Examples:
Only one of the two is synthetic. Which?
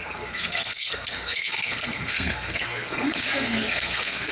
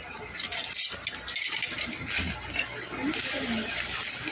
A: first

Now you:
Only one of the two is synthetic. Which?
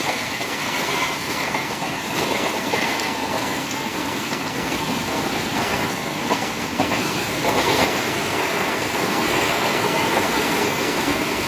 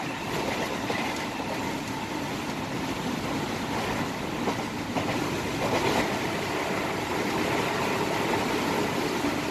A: first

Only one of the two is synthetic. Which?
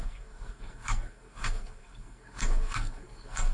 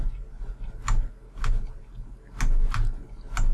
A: first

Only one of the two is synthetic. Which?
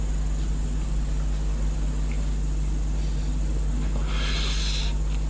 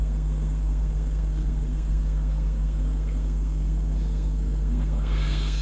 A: second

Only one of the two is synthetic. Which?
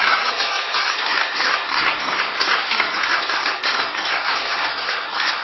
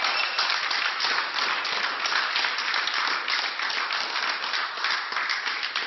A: first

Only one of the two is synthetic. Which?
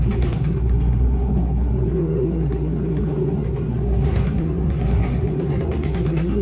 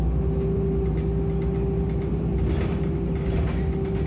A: first